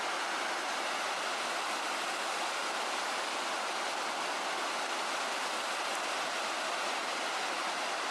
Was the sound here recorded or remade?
recorded